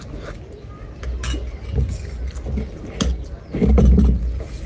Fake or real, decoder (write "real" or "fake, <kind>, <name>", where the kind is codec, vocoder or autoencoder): real